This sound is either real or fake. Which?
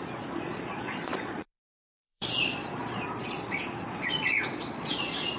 fake